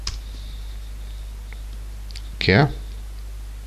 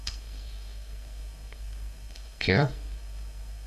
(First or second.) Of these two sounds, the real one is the first